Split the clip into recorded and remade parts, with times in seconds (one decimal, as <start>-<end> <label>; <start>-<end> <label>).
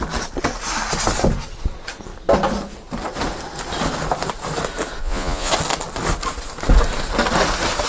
0.0-5.0 recorded; 5.0-5.5 remade; 5.5-7.9 recorded